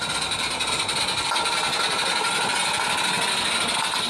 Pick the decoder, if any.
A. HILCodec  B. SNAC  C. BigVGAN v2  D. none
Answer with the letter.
D